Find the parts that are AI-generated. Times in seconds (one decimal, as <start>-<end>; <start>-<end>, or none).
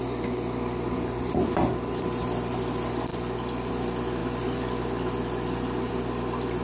none